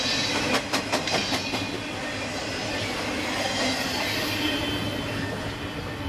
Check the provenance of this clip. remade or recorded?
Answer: recorded